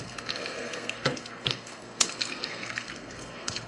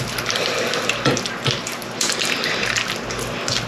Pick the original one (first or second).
second